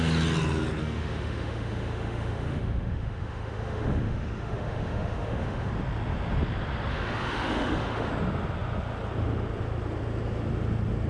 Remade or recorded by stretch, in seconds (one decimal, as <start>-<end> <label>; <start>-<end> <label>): 0.0-0.8 recorded; 0.8-5.7 remade; 5.7-6.9 recorded; 6.9-8.1 remade; 8.1-11.1 recorded